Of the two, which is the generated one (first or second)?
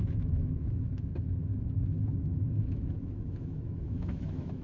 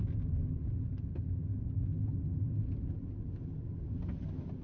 first